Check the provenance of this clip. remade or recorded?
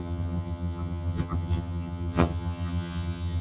remade